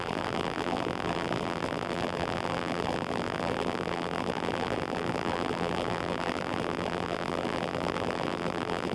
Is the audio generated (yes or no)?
yes